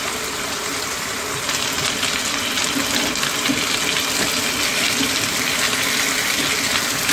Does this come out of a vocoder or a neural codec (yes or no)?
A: no